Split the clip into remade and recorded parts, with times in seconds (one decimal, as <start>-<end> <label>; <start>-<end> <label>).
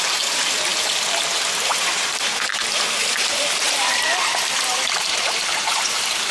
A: 0.0-1.7 recorded; 1.7-2.5 remade; 2.5-3.0 recorded; 3.0-6.3 remade